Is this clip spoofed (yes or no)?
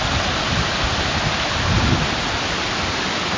no